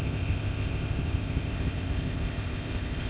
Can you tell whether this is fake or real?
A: fake